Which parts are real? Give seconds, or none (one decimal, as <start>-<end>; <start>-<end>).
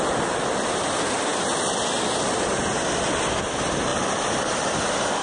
0.0-5.2